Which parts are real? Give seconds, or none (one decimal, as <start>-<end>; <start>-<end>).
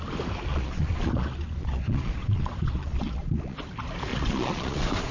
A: 0.0-0.5; 3.6-4.1